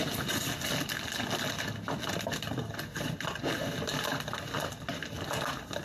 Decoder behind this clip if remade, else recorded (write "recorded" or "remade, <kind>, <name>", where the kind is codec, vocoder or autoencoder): recorded